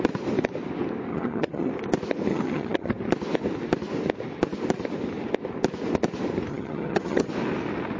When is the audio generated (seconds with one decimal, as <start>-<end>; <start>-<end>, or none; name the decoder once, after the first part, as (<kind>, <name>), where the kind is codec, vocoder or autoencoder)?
1.1-1.7 (vocoder, HiFi-GAN); 2.3-2.9; 6.5-7.3